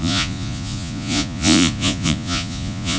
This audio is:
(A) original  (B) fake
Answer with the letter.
B